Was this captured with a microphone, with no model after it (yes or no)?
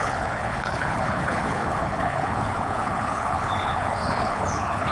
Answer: no